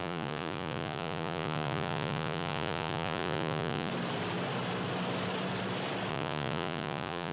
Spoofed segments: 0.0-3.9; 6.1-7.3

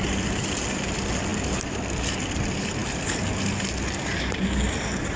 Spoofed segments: none

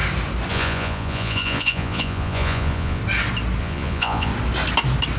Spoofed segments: 0.5-3.0; 3.6-4.3

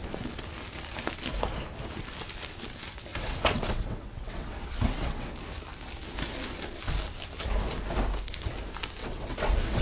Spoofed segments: 3.1-5.3; 9.0-9.8

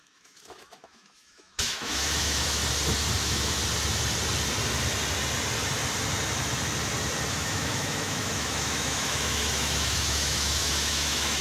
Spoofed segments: 0.0-2.6; 3.2-3.6; 7.3-11.4

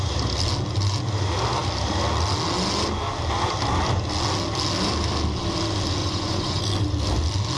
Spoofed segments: 6.0-6.6